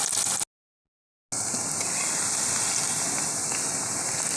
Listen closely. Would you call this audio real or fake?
real